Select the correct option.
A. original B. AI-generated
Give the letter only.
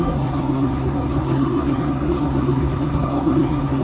B